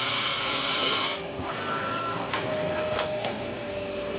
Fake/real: fake